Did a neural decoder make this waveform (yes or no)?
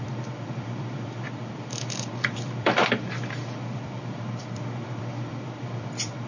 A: yes